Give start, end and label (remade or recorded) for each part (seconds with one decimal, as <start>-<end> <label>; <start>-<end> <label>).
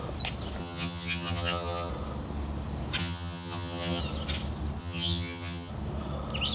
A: 0.0-0.6 recorded; 0.6-1.9 remade; 1.9-3.0 recorded; 3.0-4.0 remade; 4.0-4.8 recorded; 4.8-5.7 remade; 5.7-6.5 recorded